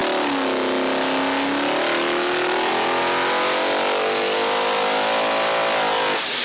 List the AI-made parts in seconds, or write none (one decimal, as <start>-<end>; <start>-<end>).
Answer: none